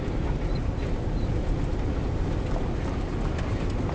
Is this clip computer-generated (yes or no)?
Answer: no